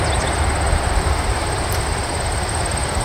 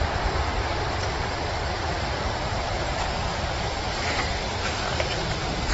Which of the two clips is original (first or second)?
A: first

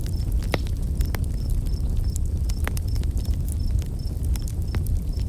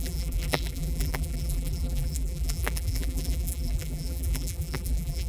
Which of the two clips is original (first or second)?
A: first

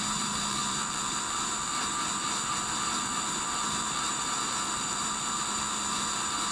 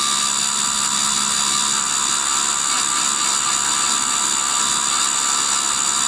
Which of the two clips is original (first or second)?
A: second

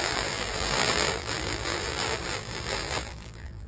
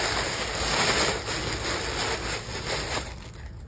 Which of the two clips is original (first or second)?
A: second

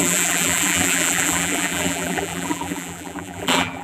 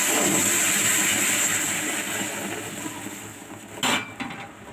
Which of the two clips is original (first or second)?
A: second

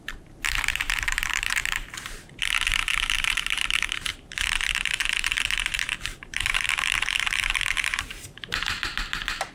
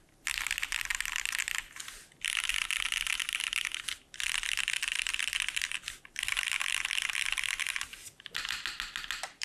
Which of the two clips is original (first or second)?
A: second